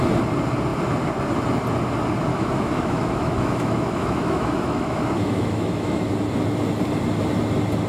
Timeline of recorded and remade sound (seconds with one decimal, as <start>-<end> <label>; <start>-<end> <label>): 0.0-2.3 recorded; 2.3-6.1 remade; 6.1-7.9 recorded